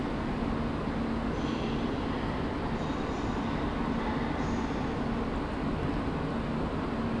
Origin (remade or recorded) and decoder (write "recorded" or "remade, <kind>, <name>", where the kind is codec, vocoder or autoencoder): recorded